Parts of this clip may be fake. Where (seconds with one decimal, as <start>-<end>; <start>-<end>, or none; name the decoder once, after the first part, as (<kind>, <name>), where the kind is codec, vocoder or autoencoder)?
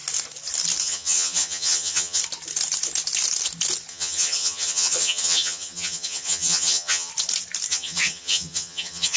0.8-2.2 (vocoder, HiFi-GAN); 3.9-7.1; 7.7-9.2